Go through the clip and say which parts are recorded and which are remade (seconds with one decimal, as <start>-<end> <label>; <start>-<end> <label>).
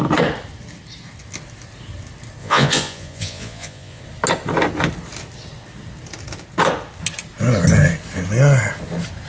0.0-2.4 recorded; 2.4-4.0 remade; 4.0-9.3 recorded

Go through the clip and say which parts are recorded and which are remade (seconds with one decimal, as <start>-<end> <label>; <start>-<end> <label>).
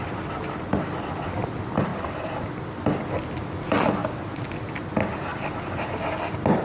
0.0-6.6 recorded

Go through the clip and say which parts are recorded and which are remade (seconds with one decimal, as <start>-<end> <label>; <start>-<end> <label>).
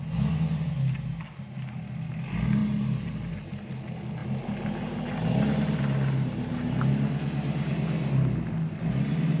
0.0-9.4 recorded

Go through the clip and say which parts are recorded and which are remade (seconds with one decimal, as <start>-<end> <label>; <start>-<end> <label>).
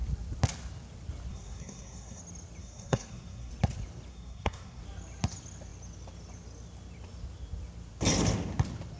0.0-1.3 recorded; 1.3-2.2 remade; 2.2-2.6 recorded; 2.6-3.5 remade; 3.5-4.1 recorded; 4.1-4.8 remade; 4.8-9.0 recorded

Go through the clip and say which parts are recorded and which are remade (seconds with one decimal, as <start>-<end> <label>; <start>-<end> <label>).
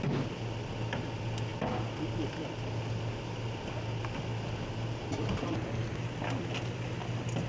0.0-7.5 recorded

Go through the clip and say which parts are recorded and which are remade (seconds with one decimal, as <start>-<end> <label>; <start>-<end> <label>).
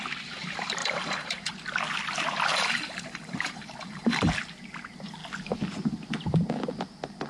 0.0-0.8 recorded; 0.8-1.5 remade; 1.5-2.5 recorded; 2.5-4.3 remade; 4.3-7.3 recorded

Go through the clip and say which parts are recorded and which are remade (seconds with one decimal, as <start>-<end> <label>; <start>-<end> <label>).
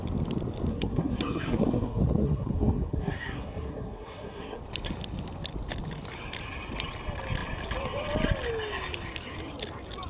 0.0-0.7 recorded; 0.7-4.6 remade; 4.6-10.1 recorded